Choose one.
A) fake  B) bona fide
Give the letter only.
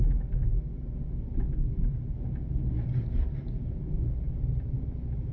B